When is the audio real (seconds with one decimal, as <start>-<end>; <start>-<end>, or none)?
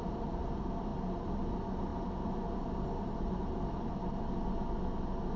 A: 0.0-5.4